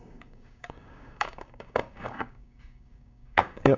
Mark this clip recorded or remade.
remade